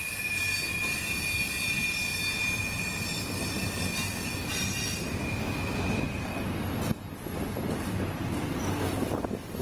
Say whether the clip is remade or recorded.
recorded